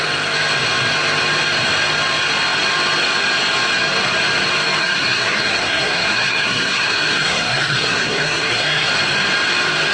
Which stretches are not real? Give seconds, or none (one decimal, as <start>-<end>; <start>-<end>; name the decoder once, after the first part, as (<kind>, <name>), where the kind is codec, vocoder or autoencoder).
4.8-8.9 (codec, SNAC)